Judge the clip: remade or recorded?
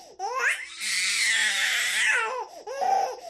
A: recorded